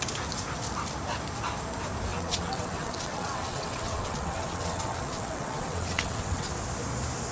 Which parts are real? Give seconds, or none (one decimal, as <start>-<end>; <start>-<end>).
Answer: 0.0-2.1; 6.5-7.3

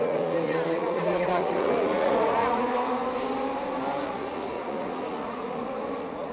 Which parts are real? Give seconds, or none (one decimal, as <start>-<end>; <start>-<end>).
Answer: 3.0-4.0

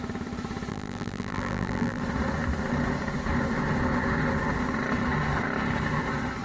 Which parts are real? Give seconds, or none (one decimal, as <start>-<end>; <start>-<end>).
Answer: 0.0-0.7; 2.0-6.4

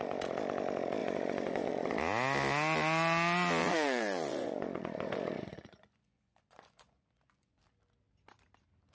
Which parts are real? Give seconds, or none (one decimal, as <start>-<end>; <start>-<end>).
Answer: 0.0-1.0; 1.9-3.6; 7.6-8.9

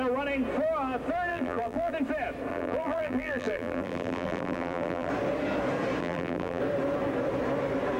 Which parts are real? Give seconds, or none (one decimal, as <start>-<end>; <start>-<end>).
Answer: 0.0-1.3; 1.9-2.5; 5.1-6.0; 6.6-8.0